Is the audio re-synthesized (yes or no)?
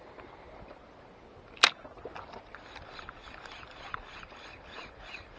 no